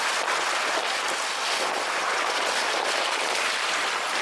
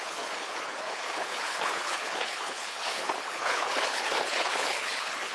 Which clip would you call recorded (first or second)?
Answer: first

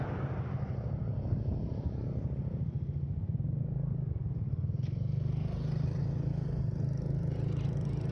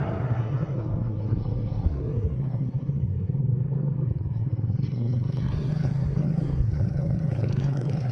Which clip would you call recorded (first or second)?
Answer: first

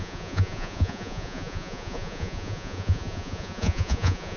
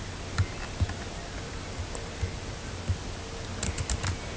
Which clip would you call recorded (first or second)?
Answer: second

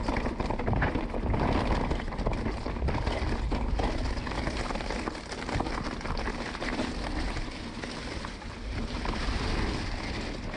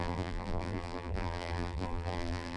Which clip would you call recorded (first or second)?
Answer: first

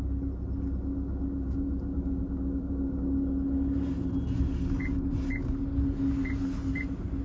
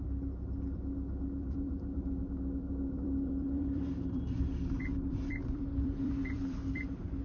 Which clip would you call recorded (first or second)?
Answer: first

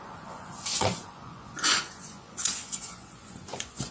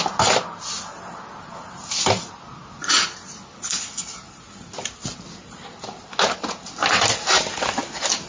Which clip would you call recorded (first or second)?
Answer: second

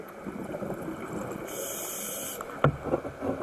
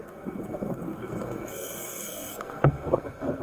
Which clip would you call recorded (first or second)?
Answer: first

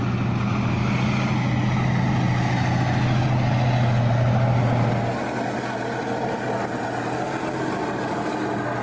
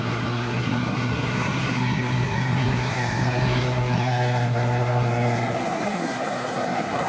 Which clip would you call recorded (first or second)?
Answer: first